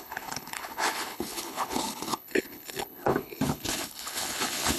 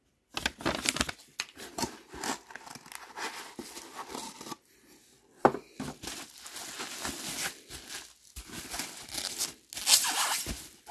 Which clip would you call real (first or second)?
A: second